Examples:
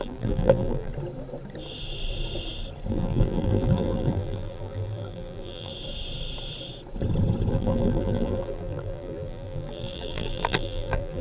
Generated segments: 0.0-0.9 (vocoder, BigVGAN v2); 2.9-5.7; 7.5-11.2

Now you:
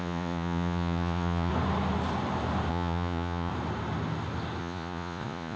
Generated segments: 0.0-1.5 (vocoder, Vocos); 2.7-3.5; 4.6-5.6

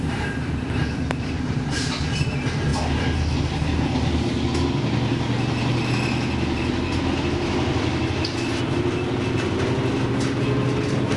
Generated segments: none

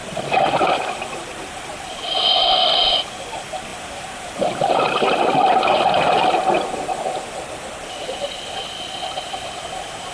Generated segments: 0.0-10.1 (vocoder, BigVGAN v2)

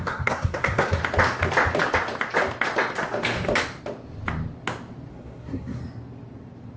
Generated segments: 0.0-1.0 (codec, SNAC); 5.1-5.8